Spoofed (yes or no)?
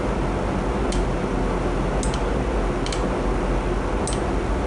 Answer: no